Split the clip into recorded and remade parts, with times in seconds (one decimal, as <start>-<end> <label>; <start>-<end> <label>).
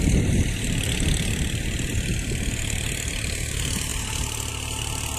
0.0-5.2 recorded